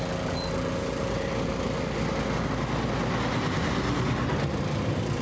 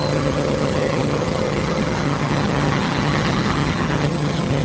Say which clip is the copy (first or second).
second